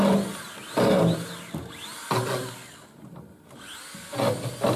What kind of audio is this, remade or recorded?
recorded